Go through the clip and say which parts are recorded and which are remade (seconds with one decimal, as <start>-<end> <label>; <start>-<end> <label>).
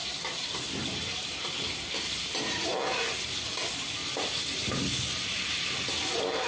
0.0-2.5 remade; 2.5-4.0 recorded; 4.0-5.5 remade; 5.5-6.5 recorded